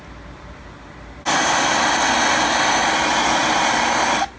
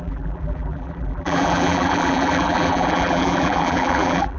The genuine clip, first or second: first